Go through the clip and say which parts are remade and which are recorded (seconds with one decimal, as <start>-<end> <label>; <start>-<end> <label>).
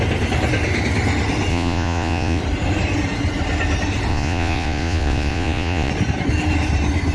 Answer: 0.0-1.5 recorded; 1.5-2.4 remade; 2.4-4.1 recorded; 4.1-5.9 remade; 5.9-7.1 recorded